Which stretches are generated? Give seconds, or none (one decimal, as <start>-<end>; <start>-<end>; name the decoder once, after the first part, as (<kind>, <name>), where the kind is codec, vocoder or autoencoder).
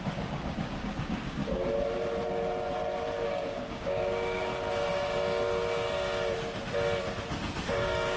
0.0-1.4 (codec, DAC); 3.2-4.5; 7.7-8.2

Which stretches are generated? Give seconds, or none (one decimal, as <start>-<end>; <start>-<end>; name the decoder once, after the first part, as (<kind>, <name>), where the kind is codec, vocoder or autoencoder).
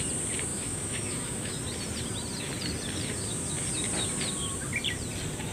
0.5-1.5 (autoencoder, DAC-VAE)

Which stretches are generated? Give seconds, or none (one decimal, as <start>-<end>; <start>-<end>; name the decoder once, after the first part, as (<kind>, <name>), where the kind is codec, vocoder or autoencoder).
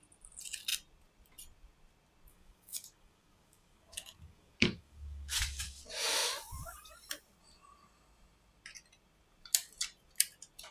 2.3-5.8 (codec, DAC)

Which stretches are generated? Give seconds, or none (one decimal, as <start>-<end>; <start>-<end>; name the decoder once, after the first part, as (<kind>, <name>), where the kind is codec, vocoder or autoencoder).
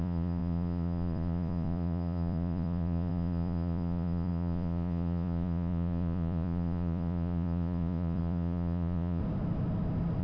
0.0-9.2 (vocoder, Vocos)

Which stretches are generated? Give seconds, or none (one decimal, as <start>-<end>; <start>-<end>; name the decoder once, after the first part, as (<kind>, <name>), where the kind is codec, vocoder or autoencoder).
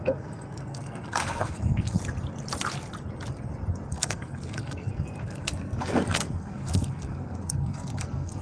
0.0-2.0 (codec, SNAC); 3.9-8.4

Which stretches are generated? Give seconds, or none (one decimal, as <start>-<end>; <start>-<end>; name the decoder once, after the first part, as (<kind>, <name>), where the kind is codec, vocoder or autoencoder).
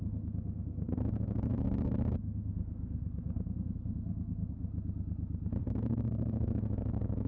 0.0-4.7 (codec, SNAC); 5.6-7.3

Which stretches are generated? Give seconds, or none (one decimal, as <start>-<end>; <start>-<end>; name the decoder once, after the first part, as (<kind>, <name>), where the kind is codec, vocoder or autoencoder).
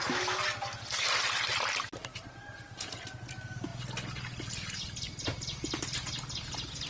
none